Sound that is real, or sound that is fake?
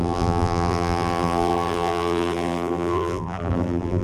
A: fake